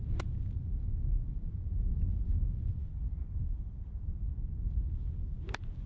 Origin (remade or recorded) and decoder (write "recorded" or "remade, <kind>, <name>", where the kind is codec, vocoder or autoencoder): recorded